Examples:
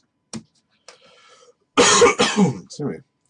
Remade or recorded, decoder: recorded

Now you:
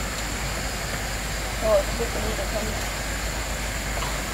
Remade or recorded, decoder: recorded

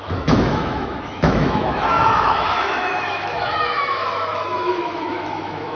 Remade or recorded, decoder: remade, autoencoder, DAC-VAE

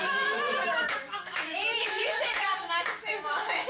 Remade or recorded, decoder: remade, autoencoder, DAC-VAE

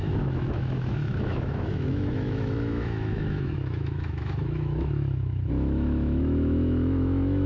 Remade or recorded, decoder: remade, autoencoder, DAC-VAE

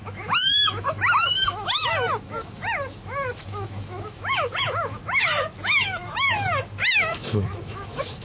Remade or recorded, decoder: remade, autoencoder, DAC-VAE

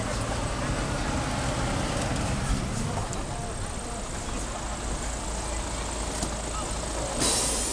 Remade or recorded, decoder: recorded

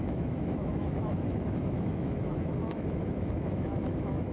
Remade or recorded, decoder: remade, autoencoder, DAC-VAE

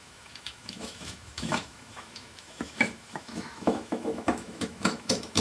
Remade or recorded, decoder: remade, autoencoder, DAC-VAE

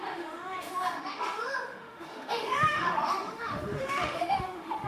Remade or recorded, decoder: remade, autoencoder, DAC-VAE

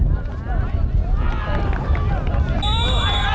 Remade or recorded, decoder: recorded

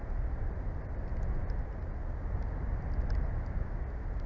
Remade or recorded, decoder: recorded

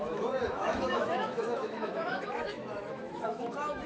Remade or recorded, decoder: remade, autoencoder, DAC-VAE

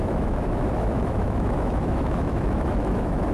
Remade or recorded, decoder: remade, autoencoder, DAC-VAE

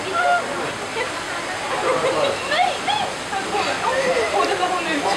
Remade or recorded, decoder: recorded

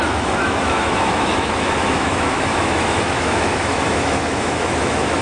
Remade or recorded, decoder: remade, autoencoder, DAC-VAE